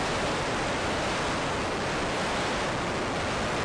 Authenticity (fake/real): real